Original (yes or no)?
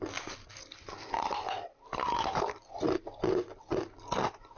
yes